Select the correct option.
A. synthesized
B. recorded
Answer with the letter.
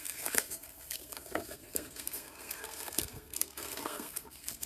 A